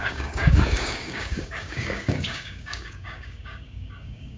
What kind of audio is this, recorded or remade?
remade